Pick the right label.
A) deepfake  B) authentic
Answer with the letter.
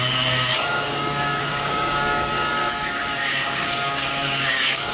A